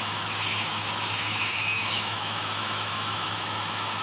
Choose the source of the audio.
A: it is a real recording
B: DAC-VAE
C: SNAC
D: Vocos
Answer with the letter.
B